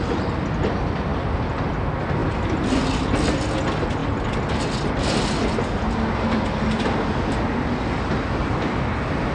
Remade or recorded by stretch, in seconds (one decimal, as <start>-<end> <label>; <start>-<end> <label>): 0.0-9.3 recorded